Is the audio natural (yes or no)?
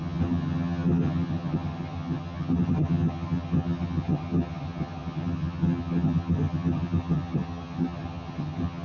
no